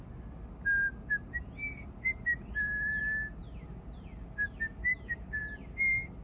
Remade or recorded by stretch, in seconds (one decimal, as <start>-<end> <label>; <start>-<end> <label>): 0.0-2.3 recorded; 2.3-3.0 remade; 3.0-3.4 recorded; 3.4-5.4 remade; 5.4-6.2 recorded